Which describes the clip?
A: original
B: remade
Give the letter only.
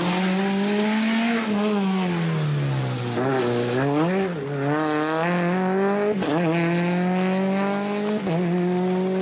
A